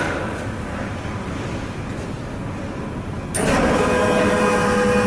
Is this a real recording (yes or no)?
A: yes